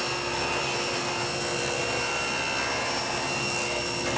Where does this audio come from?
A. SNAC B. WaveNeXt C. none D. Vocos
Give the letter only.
C